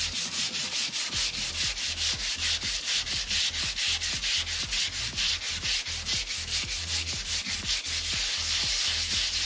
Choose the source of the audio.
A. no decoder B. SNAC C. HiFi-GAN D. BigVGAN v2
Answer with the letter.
A